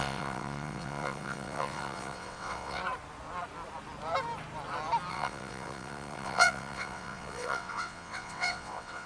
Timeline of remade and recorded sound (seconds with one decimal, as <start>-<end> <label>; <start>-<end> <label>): 0.0-2.8 remade; 2.8-5.1 recorded; 5.1-9.1 remade